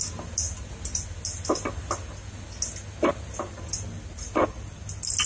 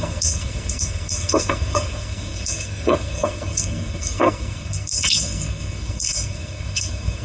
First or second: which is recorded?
first